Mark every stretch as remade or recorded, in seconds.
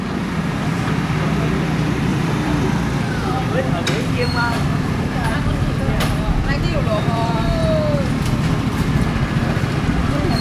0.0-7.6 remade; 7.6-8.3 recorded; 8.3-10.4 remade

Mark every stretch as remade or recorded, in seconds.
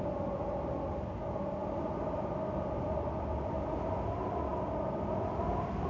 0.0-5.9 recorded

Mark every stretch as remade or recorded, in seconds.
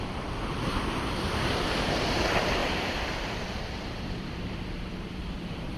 0.0-2.6 recorded; 2.6-4.6 remade; 4.6-5.8 recorded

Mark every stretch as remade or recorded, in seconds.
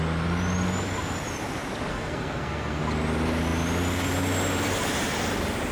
0.0-1.9 recorded; 1.9-2.8 remade; 2.8-5.7 recorded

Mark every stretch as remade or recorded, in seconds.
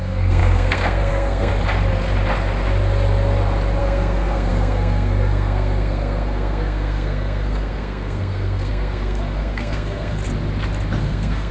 0.0-1.5 remade; 1.5-3.8 recorded; 3.8-10.2 remade; 10.2-11.0 recorded; 11.0-11.5 remade